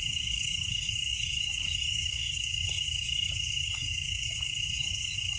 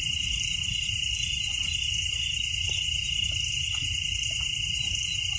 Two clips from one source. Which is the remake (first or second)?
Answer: first